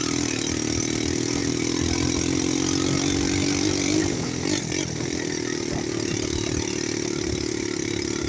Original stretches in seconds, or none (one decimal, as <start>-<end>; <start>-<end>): 0.0-8.3